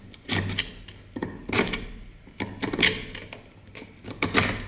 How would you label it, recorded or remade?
recorded